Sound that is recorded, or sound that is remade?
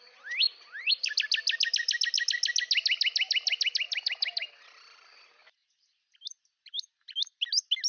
recorded